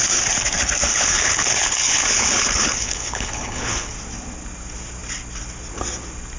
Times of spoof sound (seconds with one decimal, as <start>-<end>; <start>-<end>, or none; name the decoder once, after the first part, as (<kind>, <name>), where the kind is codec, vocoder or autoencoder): 0.9-3.9 (codec, HILCodec)